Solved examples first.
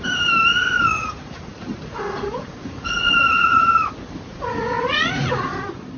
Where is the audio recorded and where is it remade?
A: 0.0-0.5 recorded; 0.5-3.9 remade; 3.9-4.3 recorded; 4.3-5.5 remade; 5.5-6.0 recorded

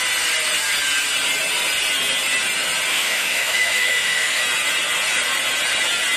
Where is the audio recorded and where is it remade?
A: 0.0-2.9 recorded; 2.9-4.4 remade; 4.4-6.2 recorded

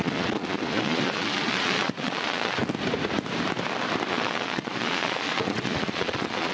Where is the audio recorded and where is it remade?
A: 0.0-2.6 remade; 2.6-4.1 recorded; 4.1-6.5 remade

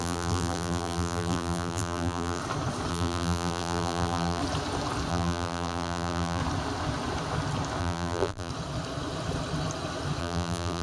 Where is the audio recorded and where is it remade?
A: 0.0-2.4 remade; 2.4-2.9 recorded; 2.9-4.4 remade; 4.4-5.1 recorded; 5.1-6.4 remade; 6.4-7.8 recorded; 7.8-8.5 remade; 8.5-10.2 recorded; 10.2-10.8 remade

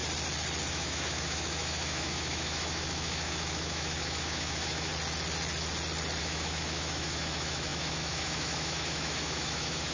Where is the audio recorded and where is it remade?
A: 0.0-0.7 recorded; 0.7-4.9 remade; 4.9-6.2 recorded; 6.2-9.9 remade

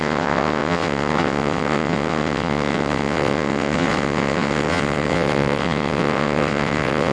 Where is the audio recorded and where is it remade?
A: 0.0-7.1 remade

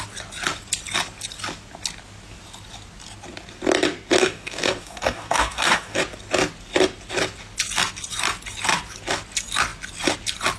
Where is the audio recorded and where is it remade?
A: 0.0-4.2 recorded; 4.2-6.0 remade; 6.0-10.6 recorded